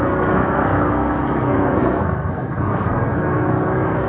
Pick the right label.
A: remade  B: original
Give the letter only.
A